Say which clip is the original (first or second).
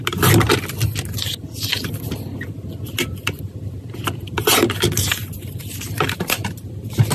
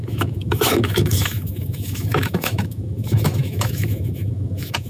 first